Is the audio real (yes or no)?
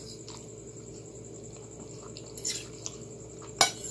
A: yes